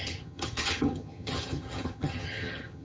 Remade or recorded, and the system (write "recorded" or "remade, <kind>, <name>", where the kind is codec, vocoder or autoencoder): remade, vocoder, HiFi-GAN